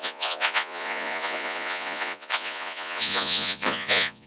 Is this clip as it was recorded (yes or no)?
no